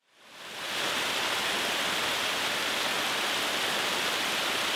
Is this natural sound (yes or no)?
yes